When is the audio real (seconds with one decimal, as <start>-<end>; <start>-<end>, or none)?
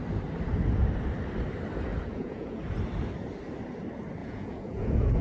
0.0-1.9; 2.6-4.2